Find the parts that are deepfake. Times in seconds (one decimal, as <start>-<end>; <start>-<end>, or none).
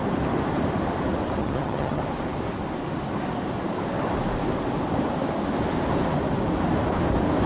1.4-2.0